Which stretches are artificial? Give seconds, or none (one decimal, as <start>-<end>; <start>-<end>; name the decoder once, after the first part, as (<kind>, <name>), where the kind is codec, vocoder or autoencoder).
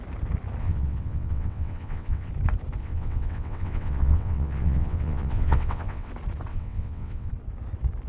0.6-2.3 (vocoder, WaveNeXt); 2.8-6.1; 6.5-7.3